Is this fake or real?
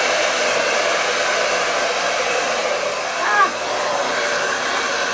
real